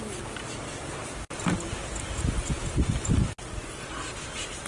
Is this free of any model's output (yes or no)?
yes